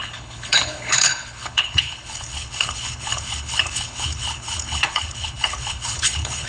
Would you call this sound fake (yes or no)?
yes